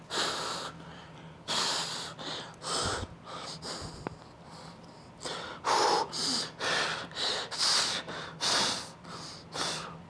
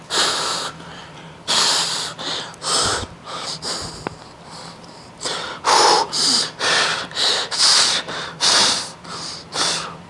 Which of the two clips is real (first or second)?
first